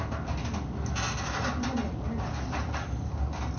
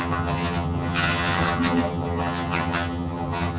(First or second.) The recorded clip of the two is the first